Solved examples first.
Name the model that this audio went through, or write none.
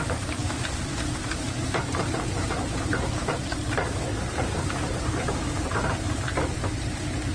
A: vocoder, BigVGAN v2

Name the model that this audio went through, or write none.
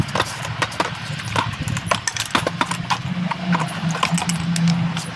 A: none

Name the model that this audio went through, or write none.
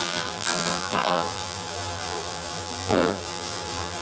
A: vocoder, BigVGAN v2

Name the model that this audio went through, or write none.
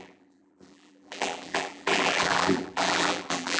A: vocoder, BigVGAN v2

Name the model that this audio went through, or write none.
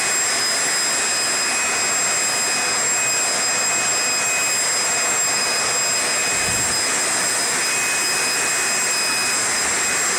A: none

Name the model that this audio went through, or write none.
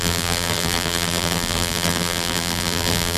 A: vocoder, BigVGAN v2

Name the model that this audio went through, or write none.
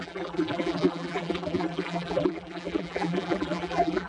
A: vocoder, BigVGAN v2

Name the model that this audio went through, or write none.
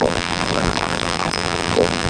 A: vocoder, BigVGAN v2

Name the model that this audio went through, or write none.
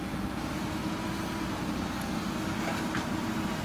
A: none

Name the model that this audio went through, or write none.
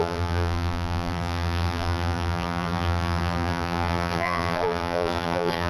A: vocoder, BigVGAN v2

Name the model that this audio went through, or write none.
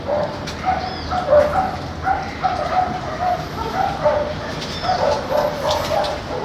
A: none